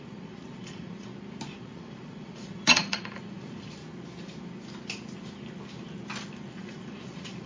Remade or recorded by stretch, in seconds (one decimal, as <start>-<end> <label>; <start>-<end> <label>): 0.0-1.1 remade; 1.1-1.6 recorded; 1.6-3.8 remade; 3.8-6.5 recorded; 6.5-7.5 remade